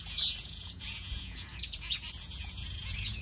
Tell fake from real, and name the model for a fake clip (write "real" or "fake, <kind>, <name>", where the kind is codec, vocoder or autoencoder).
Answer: fake, vocoder, Vocos